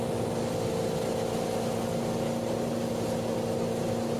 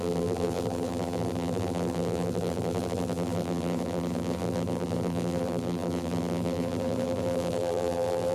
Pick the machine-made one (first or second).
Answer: second